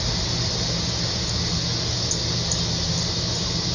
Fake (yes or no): no